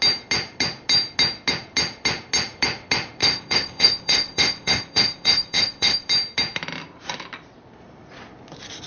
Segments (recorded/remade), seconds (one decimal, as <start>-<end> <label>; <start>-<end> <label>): 0.0-3.2 recorded; 3.2-6.1 remade; 6.1-8.9 recorded